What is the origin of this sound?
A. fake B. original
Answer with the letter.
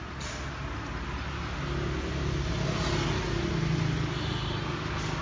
B